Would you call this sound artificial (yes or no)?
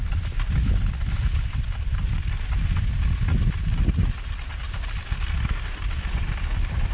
no